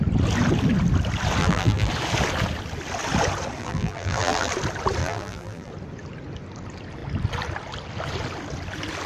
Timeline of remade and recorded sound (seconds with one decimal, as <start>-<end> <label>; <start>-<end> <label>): 0.0-1.4 recorded; 1.4-1.9 remade; 1.9-3.6 recorded; 3.6-4.5 remade; 4.5-5.0 recorded; 5.0-5.7 remade; 5.7-9.1 recorded